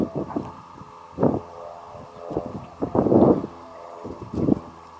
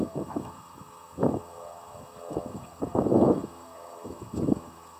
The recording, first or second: first